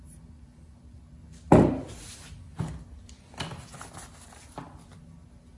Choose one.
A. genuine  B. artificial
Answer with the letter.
A